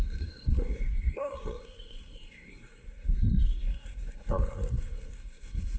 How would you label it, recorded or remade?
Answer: remade